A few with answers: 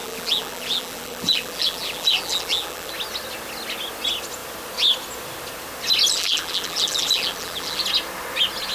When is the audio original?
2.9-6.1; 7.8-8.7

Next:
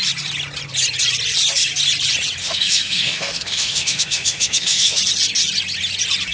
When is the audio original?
0.0-2.4; 5.0-6.3

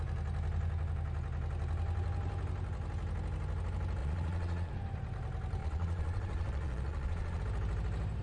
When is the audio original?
0.0-4.0; 4.7-5.6; 7.4-8.2

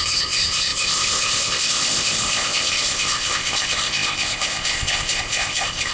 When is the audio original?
none